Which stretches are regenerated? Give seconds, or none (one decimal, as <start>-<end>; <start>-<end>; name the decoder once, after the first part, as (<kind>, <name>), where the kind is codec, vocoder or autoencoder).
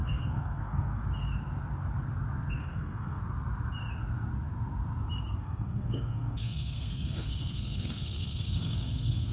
0.0-1.0 (codec, SNAC); 2.5-3.2; 5.4-9.3